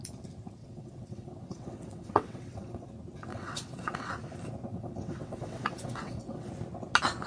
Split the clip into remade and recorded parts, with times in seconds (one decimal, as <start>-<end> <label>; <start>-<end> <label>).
0.0-0.6 recorded; 0.6-2.9 remade; 2.9-3.3 recorded; 3.3-4.1 remade; 4.1-4.7 recorded; 4.7-6.5 remade; 6.5-7.3 recorded